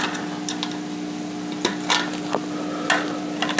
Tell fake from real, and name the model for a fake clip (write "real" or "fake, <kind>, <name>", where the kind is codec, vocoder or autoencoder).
real